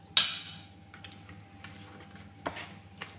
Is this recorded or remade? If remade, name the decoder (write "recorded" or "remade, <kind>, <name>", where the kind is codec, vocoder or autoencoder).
recorded